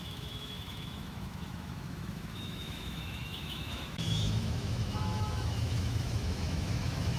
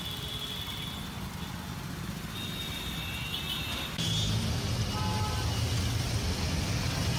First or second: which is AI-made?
first